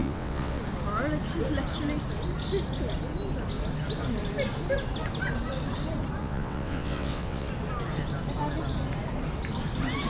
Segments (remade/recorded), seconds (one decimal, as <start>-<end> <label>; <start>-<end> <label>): 0.0-0.6 remade; 0.6-6.2 recorded; 6.2-7.5 remade; 7.5-10.1 recorded